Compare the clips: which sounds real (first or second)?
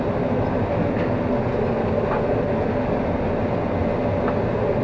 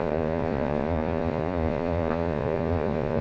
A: first